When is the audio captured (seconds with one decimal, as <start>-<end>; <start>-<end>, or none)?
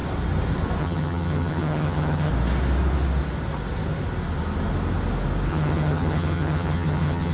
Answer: 0.0-0.8; 2.3-5.5